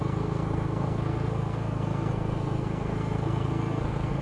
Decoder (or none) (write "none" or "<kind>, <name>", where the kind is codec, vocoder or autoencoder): codec, SNAC